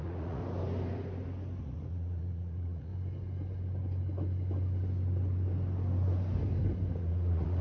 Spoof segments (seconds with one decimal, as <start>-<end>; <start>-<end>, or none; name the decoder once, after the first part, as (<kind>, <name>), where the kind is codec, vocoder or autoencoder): 0.0-0.4 (vocoder, Vocos); 1.6-2.9; 6.9-7.6